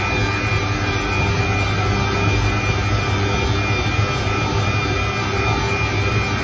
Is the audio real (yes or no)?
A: yes